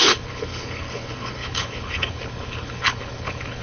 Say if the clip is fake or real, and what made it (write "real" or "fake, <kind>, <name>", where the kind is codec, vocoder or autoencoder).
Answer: fake, codec, HILCodec